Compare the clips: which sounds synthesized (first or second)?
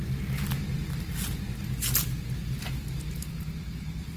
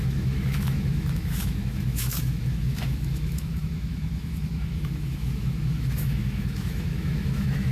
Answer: second